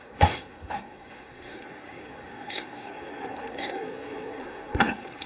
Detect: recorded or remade remade